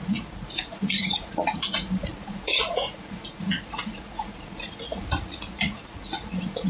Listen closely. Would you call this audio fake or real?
fake